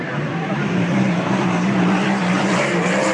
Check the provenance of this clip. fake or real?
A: fake